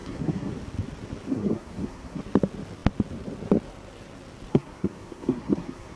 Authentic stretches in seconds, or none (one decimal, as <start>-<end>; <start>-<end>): 0.5-1.3; 2.2-4.5